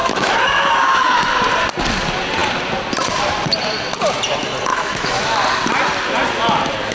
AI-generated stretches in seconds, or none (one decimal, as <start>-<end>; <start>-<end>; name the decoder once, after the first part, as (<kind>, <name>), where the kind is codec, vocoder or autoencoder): 0.0-1.3 (autoencoder, DAC-VAE); 4.7-5.4